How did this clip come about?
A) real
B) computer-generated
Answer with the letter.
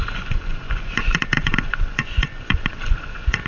B